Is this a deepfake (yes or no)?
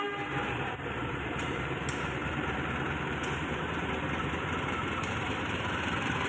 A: yes